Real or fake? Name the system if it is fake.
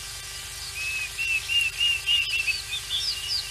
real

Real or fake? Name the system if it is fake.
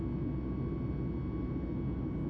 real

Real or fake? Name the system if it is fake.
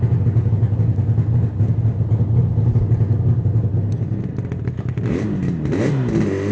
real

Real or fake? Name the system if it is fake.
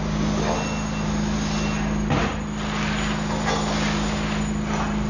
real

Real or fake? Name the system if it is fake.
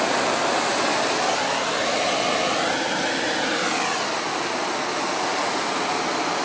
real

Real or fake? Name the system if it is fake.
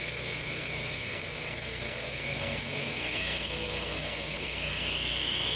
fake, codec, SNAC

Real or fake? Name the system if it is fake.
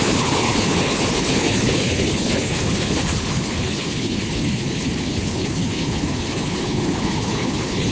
fake, codec, HILCodec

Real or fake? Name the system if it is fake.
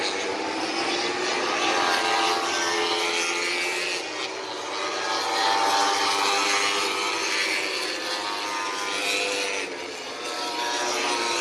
real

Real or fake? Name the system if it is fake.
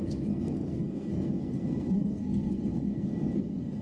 fake, codec, SNAC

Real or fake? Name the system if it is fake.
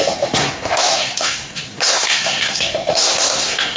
fake, codec, SNAC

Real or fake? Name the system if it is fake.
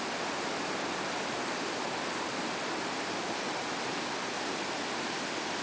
real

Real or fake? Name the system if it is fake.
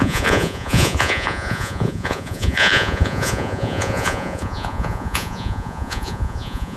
fake, vocoder, Vocos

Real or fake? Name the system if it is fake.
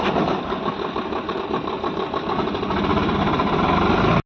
real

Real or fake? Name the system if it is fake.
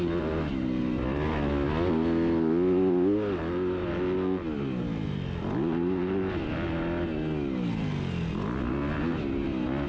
real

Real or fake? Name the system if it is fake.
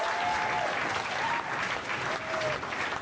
real